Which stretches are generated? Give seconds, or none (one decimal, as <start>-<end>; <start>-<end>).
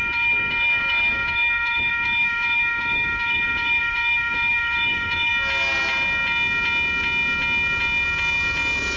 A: 0.0-5.3